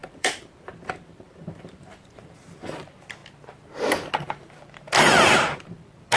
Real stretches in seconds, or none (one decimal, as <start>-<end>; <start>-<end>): 3.2-4.2